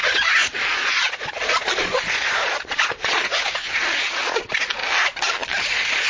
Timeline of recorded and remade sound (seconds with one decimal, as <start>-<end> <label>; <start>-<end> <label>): 0.0-4.8 remade; 4.8-5.6 recorded; 5.6-6.1 remade